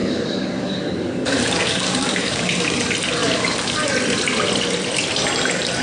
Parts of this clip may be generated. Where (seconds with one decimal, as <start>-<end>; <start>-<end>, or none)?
0.0-2.8; 3.2-3.9